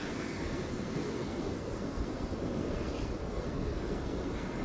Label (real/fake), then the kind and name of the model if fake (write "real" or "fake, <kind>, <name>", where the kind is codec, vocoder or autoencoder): fake, codec, SNAC